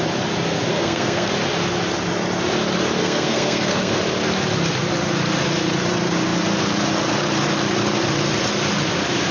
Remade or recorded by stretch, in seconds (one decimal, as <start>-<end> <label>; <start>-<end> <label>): 0.0-0.7 recorded; 0.7-1.3 remade; 1.3-3.0 recorded; 3.0-4.0 remade; 4.0-9.3 recorded